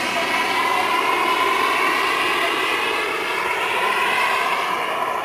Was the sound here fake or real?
real